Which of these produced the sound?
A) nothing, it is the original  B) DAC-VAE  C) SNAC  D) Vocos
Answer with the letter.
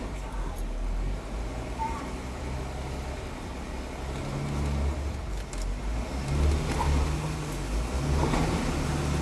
A